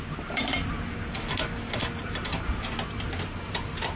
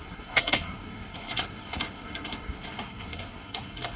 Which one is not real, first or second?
second